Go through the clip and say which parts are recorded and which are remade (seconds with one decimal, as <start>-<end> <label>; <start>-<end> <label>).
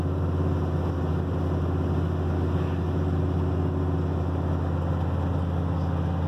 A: 0.0-6.3 recorded